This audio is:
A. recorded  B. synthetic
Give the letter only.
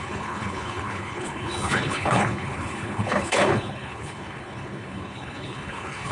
B